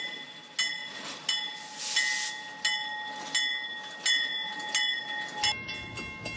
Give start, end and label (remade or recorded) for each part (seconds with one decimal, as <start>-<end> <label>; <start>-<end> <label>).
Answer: 0.0-6.4 recorded